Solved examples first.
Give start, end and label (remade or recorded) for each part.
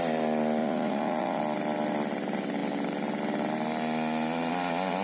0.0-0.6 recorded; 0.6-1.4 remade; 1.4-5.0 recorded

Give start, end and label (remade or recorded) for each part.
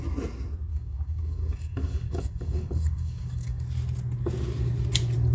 0.0-0.7 recorded; 0.7-3.6 remade; 3.6-5.3 recorded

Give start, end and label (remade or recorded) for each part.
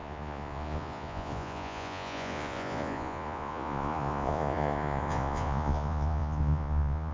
0.0-7.1 remade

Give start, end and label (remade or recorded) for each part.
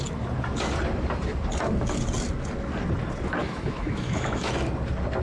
0.0-3.4 recorded; 3.4-4.5 remade; 4.5-5.2 recorded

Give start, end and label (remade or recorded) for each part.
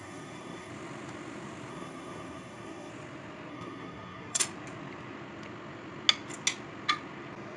0.0-0.7 remade; 0.7-1.7 recorded; 1.7-2.9 remade; 2.9-3.5 recorded; 3.5-4.4 remade; 4.4-7.6 recorded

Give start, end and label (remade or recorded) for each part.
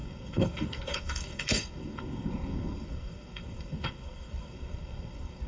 0.0-5.5 remade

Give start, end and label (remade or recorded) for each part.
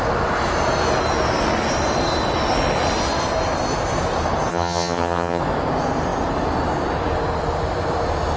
0.0-4.5 recorded; 4.5-5.4 remade; 5.4-8.4 recorded